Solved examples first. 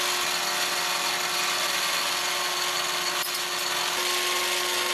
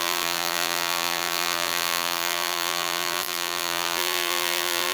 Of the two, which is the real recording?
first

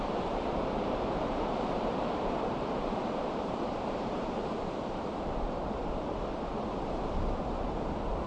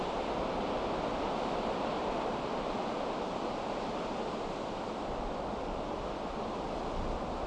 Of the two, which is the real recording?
second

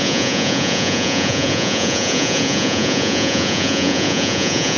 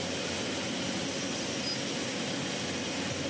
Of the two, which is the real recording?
second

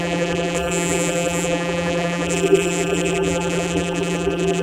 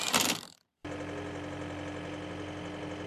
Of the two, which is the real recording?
second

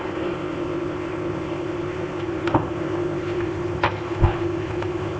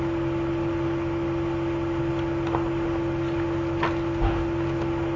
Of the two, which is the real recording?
second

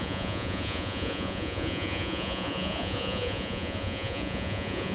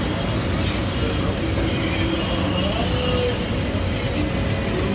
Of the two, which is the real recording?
second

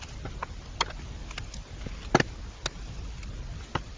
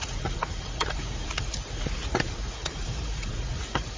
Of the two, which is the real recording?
first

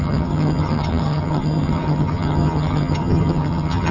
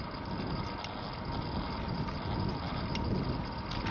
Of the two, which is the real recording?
second